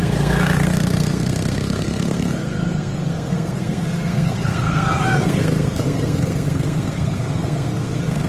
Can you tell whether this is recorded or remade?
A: remade